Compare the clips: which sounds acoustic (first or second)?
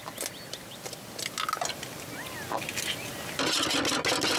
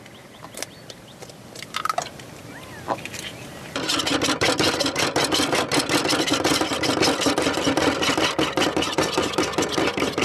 first